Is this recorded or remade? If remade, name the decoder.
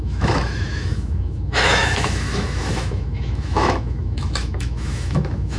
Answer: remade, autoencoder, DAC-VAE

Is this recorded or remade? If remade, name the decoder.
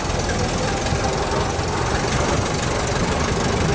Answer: recorded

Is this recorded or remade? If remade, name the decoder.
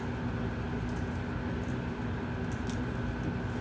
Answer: recorded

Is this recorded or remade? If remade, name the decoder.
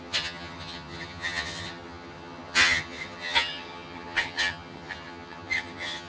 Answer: remade, vocoder, HiFi-GAN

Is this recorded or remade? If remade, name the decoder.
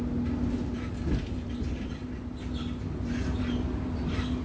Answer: recorded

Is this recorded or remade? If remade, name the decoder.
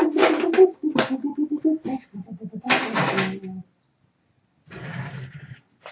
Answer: recorded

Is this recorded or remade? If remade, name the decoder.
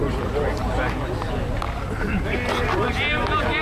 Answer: recorded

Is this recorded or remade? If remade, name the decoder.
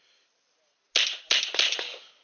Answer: recorded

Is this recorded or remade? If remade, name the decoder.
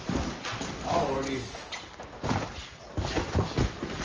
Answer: recorded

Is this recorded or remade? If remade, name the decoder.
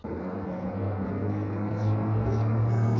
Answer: remade, codec, SNAC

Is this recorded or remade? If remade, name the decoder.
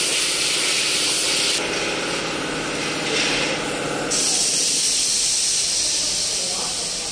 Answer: recorded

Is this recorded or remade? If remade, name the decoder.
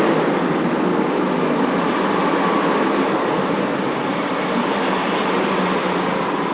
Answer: recorded